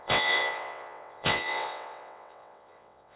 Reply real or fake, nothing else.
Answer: fake